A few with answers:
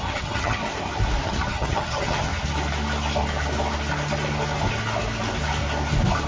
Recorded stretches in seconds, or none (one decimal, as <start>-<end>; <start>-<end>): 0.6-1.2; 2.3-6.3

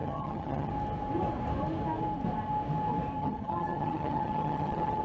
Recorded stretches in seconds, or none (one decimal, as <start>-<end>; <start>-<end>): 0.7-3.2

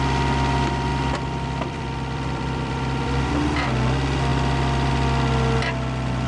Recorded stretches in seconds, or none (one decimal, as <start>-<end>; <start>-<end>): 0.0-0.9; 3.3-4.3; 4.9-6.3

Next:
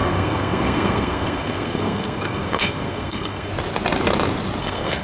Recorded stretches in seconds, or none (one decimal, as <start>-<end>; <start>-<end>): 3.5-4.6